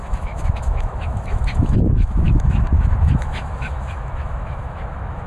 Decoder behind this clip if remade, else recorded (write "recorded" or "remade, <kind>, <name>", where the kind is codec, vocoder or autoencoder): remade, autoencoder, DAC-VAE